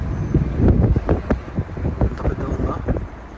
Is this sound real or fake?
fake